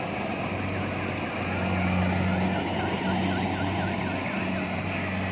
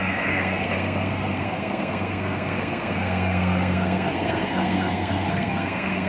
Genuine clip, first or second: first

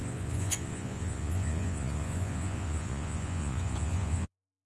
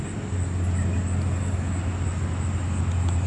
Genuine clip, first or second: second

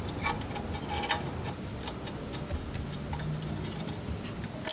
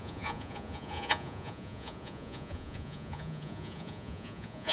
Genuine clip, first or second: first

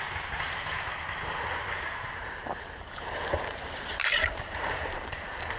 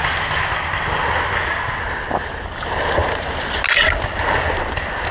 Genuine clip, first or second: second